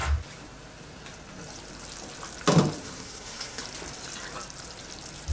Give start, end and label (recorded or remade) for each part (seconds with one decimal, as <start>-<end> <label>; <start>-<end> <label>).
0.0-2.8 recorded; 2.8-3.6 remade; 3.6-5.3 recorded